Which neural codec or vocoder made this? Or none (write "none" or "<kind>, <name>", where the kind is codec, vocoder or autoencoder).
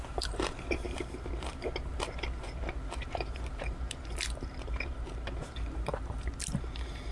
vocoder, BigVGAN v2